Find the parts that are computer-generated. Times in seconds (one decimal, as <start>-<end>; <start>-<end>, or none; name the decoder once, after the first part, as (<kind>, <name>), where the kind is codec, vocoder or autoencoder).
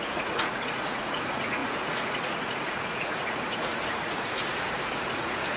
0.0-5.6 (vocoder, Vocos)